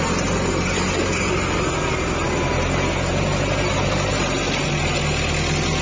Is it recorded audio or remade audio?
recorded